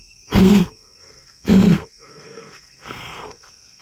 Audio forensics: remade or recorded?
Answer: remade